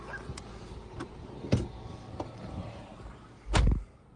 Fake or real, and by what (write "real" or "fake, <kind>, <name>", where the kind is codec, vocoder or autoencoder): real